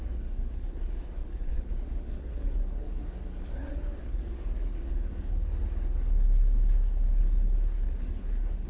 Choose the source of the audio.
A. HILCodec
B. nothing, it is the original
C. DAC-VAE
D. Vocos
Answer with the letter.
A